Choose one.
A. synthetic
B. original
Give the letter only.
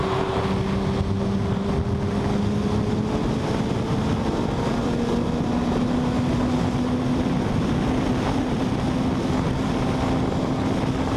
B